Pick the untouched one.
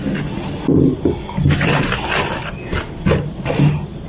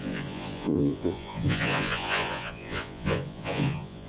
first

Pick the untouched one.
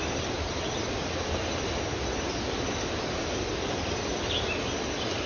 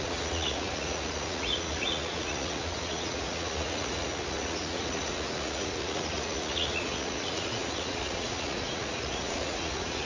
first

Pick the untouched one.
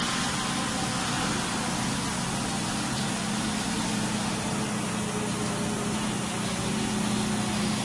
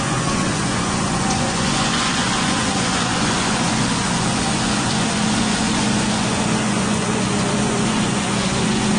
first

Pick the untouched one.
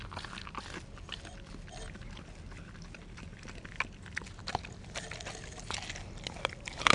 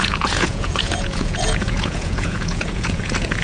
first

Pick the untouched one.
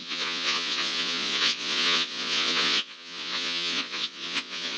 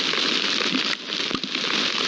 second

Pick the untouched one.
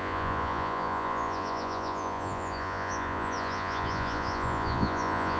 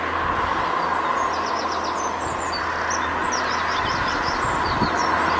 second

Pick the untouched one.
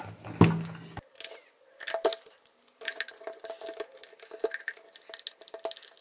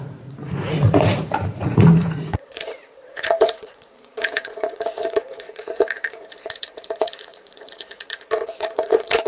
first